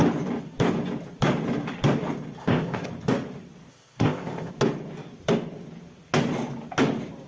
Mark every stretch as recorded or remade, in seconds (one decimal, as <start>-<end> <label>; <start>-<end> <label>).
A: 0.0-2.4 recorded; 2.4-2.9 remade; 2.9-3.7 recorded; 3.7-4.5 remade; 4.5-7.3 recorded

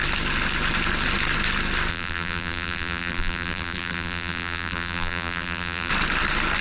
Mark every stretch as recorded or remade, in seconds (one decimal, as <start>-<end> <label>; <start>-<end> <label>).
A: 0.0-1.9 recorded; 1.9-5.9 remade; 5.9-6.6 recorded

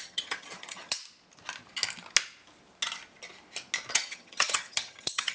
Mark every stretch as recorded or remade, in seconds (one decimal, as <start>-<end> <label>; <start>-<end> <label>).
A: 0.0-1.0 remade; 1.0-3.9 recorded; 3.9-5.3 remade

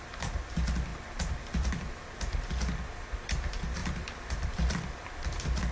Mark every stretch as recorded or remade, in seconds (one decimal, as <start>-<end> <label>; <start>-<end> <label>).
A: 0.0-0.9 recorded; 0.9-2.2 remade; 2.2-3.8 recorded; 3.8-5.7 remade